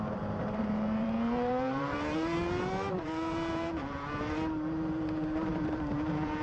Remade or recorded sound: remade